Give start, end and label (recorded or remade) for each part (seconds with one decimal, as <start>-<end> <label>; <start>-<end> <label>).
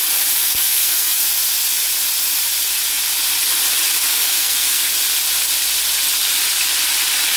0.0-0.4 recorded; 0.4-1.3 remade; 1.3-4.1 recorded; 4.1-4.9 remade; 4.9-7.4 recorded